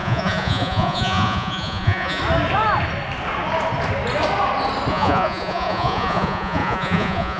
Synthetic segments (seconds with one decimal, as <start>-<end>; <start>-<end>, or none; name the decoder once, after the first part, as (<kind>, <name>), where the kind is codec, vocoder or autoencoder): 0.0-2.2 (vocoder, Vocos); 4.9-7.4